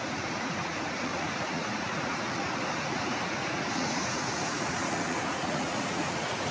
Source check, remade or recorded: remade